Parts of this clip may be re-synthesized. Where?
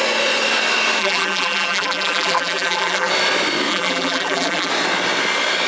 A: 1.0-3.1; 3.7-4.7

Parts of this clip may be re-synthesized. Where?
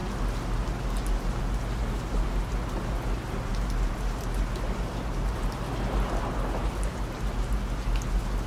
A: none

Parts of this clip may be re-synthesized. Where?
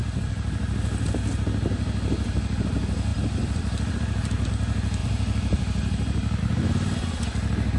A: 3.1-4.5; 5.0-6.4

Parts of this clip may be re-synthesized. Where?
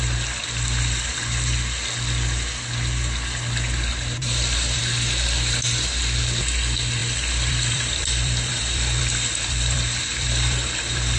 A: 4.2-4.8; 7.0-11.2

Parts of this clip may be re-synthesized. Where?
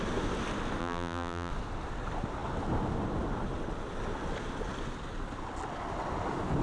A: 0.8-1.5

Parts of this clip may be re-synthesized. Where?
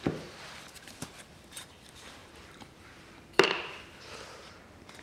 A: 0.0-5.0